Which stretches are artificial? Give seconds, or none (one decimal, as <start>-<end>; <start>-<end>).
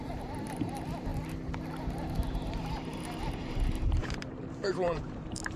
0.0-1.1; 1.8-5.6